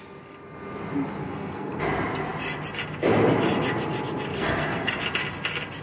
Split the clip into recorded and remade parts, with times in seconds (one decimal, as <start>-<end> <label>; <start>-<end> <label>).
0.0-1.2 recorded; 1.2-1.8 remade; 1.8-4.3 recorded; 4.3-5.0 remade; 5.0-5.8 recorded